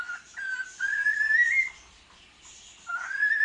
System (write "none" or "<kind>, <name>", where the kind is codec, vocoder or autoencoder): none